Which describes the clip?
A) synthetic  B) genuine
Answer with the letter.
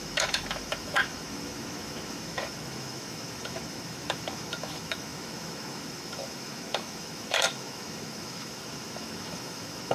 A